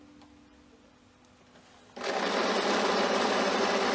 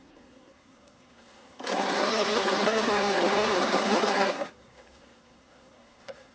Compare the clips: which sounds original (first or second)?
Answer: first